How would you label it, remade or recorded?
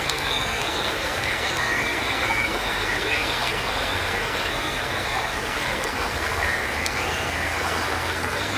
remade